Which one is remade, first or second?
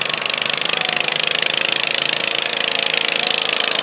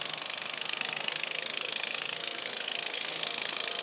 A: second